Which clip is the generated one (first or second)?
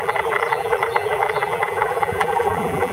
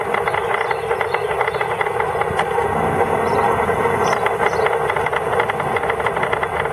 first